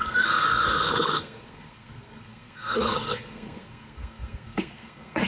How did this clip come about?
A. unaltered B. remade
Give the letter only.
B